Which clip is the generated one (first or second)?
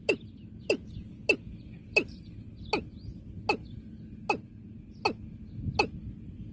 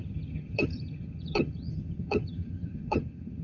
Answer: second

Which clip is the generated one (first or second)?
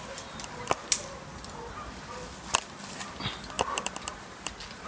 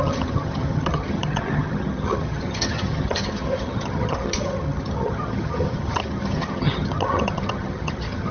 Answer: second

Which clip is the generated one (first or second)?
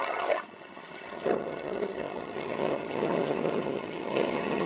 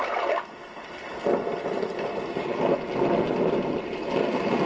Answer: first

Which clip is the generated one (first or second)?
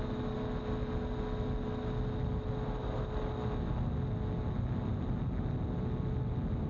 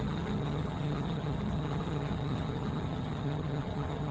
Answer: second